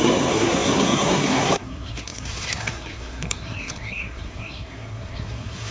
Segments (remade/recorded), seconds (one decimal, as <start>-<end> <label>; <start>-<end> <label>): 0.0-5.7 remade

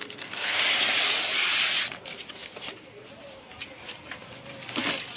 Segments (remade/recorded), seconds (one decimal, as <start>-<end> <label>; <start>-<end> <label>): 0.0-0.6 remade; 0.6-5.2 recorded